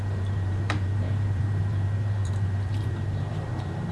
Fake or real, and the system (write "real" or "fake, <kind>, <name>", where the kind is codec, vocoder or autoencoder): fake, vocoder, BigVGAN v2